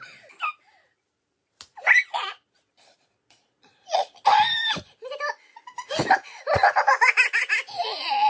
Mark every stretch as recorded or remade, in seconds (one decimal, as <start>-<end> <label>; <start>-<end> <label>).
0.0-2.0 recorded; 2.0-4.1 remade; 4.1-8.3 recorded